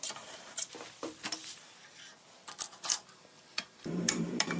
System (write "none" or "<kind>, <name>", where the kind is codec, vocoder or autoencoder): vocoder, BigVGAN v2